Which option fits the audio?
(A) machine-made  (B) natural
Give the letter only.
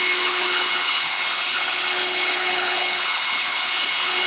A